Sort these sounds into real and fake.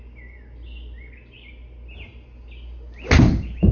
real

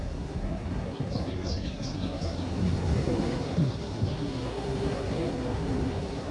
fake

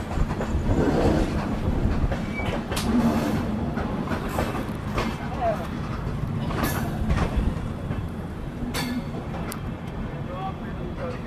fake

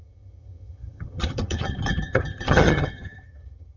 fake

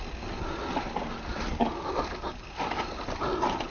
real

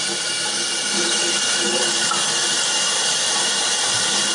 real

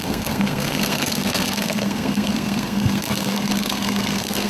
fake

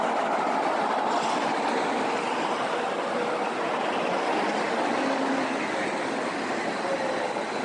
real